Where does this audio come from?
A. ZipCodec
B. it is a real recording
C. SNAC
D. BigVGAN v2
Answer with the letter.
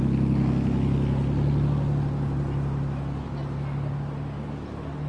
B